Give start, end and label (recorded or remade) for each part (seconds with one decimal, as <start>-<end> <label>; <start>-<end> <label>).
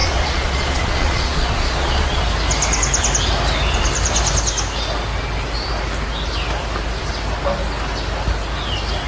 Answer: 0.0-2.2 remade; 2.2-9.1 recorded